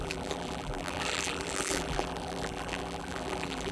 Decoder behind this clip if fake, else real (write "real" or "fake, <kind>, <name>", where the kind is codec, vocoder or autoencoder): fake, vocoder, BigVGAN v2